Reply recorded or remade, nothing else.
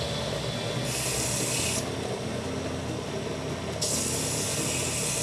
recorded